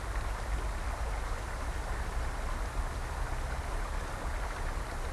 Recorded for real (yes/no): yes